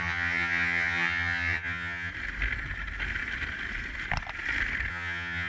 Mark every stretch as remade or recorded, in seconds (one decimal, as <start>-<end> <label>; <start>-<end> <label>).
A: 0.0-2.1 remade; 2.1-4.9 recorded; 4.9-5.5 remade